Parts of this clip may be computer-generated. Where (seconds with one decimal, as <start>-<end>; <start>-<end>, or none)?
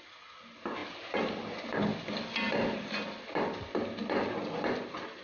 none